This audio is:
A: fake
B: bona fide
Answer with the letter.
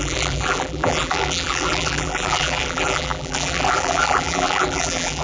A